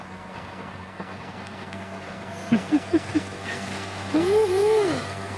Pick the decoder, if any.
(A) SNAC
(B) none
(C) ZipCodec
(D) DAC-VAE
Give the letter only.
A